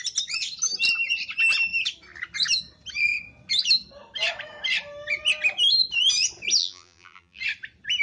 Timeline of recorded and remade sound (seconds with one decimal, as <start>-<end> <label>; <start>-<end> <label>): 0.0-6.6 recorded; 6.6-7.4 remade; 7.4-8.0 recorded